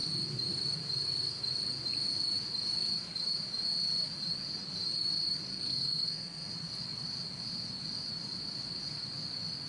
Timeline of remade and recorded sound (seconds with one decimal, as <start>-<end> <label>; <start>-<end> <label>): 0.0-5.5 recorded; 5.5-6.5 remade; 6.5-9.7 recorded